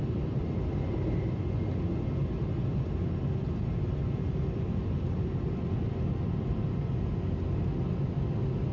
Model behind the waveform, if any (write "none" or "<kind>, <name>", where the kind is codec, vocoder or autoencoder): none